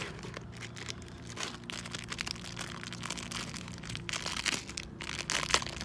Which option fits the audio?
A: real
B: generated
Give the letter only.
A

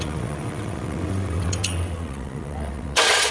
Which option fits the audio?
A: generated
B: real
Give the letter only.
A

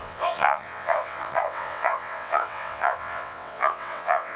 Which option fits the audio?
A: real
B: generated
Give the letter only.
B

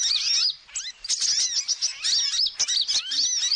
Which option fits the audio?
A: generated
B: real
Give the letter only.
B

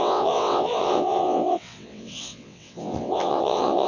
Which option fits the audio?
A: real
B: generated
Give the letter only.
B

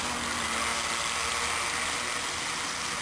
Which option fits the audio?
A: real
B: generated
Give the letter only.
A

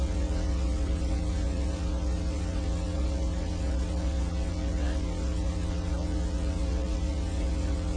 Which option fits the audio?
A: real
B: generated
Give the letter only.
B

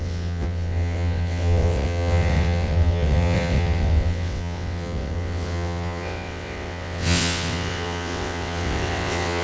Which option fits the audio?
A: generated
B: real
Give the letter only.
A